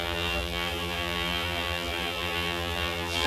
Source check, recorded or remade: remade